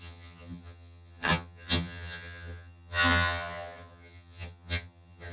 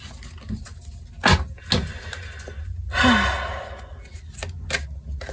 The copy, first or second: first